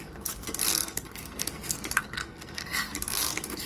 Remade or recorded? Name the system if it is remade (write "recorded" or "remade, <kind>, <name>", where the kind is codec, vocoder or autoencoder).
remade, codec, SNAC